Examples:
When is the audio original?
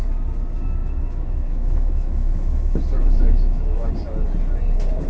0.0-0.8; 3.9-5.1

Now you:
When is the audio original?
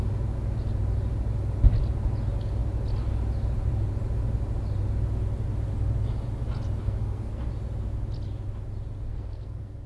0.0-6.8; 7.4-9.1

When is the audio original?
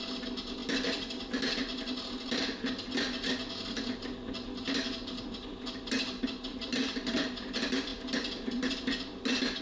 0.0-9.6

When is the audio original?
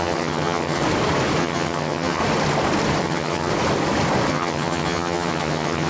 0.8-1.4; 2.2-3.0; 3.5-4.3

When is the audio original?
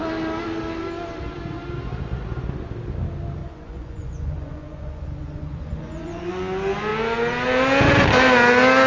0.0-3.4; 6.3-8.9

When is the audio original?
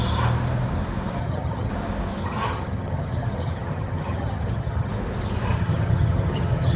0.0-1.2; 1.7-2.2; 4.9-5.5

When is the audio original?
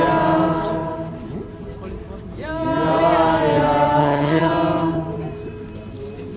0.0-4.0; 4.5-6.4